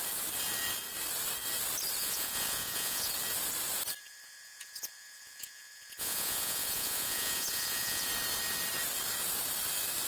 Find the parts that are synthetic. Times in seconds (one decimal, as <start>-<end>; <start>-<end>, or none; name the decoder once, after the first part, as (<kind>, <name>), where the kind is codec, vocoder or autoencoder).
2.0-3.1 (vocoder, Vocos); 4.0-8.1